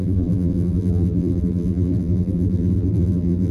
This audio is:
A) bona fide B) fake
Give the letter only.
B